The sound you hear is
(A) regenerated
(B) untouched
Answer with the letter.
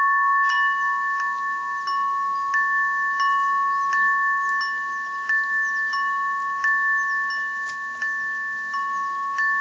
B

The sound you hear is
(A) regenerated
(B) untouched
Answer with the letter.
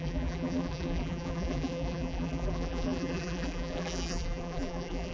A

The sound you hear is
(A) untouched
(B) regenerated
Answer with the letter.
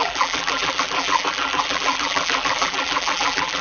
B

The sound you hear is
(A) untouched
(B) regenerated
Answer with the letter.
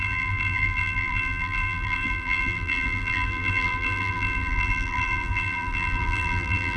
B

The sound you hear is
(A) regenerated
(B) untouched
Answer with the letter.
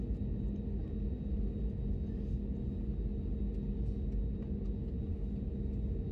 B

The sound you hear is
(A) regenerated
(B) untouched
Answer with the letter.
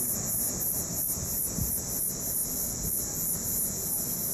B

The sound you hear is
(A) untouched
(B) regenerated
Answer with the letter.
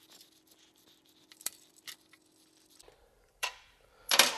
B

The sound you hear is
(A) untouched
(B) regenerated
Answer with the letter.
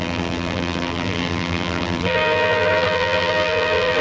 B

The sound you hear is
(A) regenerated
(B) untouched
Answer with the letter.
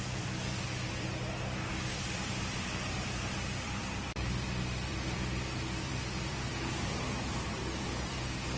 A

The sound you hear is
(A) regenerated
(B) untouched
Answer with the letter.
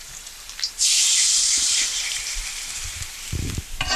A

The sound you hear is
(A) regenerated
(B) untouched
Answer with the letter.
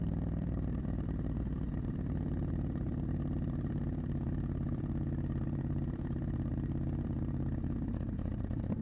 A